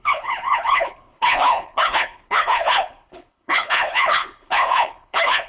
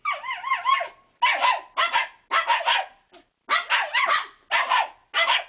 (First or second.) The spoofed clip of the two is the first